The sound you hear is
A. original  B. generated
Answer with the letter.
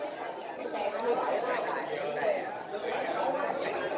A